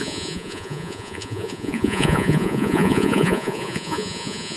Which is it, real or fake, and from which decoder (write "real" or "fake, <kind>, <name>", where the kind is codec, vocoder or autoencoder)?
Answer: fake, vocoder, Vocos